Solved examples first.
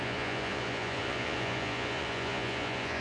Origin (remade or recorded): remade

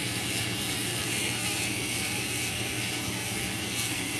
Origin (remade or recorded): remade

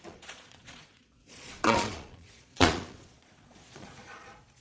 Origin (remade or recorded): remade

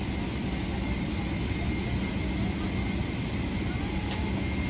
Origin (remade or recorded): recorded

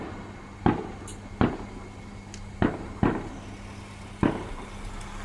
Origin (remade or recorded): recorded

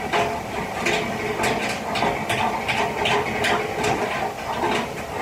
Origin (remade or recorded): recorded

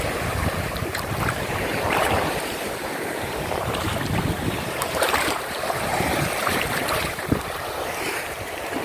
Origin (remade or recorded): remade